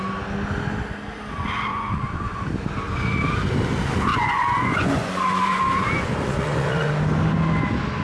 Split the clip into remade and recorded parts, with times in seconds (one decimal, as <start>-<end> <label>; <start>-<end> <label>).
0.0-1.7 recorded; 1.7-2.5 remade; 2.5-4.1 recorded; 4.1-6.9 remade; 6.9-8.0 recorded